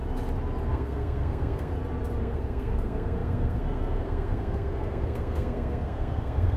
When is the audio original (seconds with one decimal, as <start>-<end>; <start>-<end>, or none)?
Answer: 0.0-0.7; 1.7-2.2